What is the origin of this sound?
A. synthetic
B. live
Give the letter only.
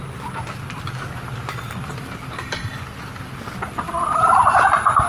B